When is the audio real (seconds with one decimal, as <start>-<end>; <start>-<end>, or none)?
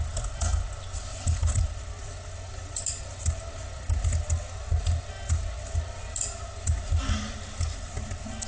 0.0-8.5